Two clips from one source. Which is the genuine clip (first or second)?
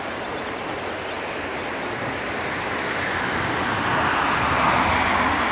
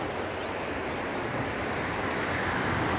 first